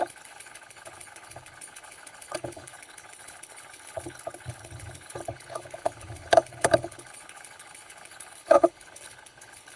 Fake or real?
fake